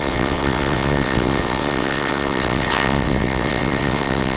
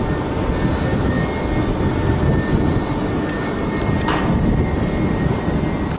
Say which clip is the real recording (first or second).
second